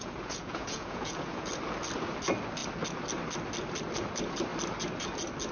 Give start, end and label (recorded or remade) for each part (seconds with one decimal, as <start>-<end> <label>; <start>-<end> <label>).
0.0-1.5 remade; 1.5-5.5 recorded